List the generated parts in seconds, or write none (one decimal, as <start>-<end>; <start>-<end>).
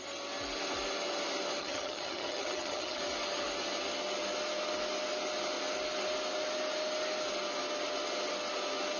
1.6-3.0